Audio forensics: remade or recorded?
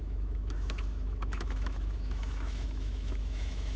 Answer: remade